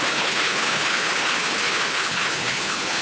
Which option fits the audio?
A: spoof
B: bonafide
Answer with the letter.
A